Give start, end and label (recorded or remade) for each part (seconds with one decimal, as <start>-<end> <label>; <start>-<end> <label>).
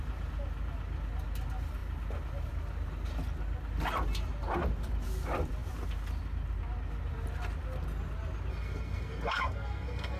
0.0-8.5 recorded; 8.5-10.2 remade